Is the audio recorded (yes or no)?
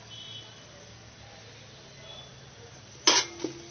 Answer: yes